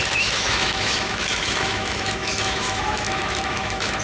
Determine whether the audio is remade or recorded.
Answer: remade